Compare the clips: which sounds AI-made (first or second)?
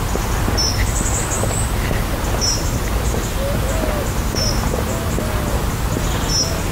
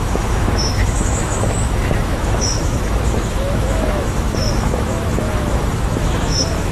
second